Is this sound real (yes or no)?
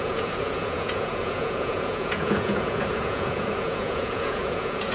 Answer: no